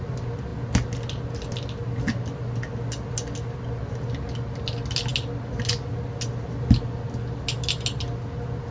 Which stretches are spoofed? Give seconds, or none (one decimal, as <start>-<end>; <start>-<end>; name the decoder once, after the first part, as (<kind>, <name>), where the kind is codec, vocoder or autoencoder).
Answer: none